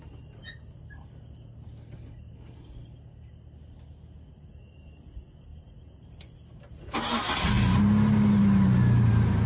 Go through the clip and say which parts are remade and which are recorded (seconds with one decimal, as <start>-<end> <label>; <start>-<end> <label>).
0.0-9.5 recorded